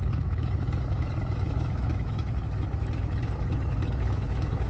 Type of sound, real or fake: fake